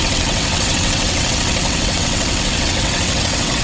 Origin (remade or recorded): remade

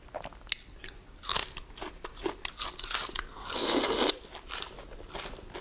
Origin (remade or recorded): recorded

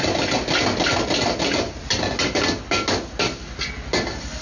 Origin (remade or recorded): recorded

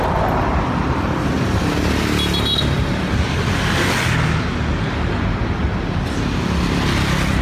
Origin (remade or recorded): recorded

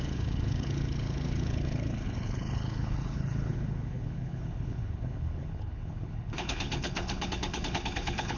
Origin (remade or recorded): remade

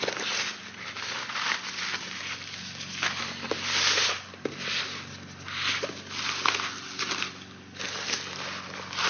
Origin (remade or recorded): recorded